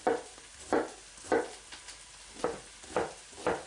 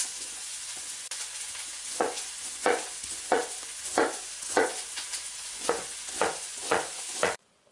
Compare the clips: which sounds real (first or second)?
first